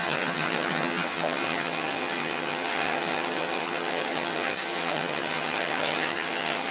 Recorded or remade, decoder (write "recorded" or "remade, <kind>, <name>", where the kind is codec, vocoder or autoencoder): remade, vocoder, HiFi-GAN